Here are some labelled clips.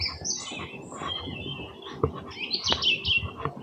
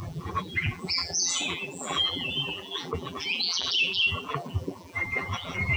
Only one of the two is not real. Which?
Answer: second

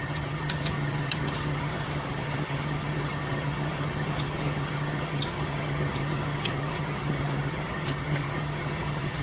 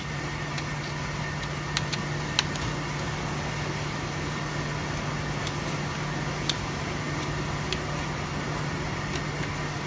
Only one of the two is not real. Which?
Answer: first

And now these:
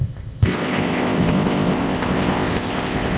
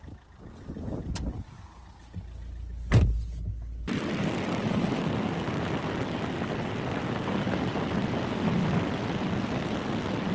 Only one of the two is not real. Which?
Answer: first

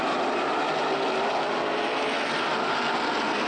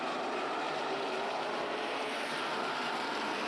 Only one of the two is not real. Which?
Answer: second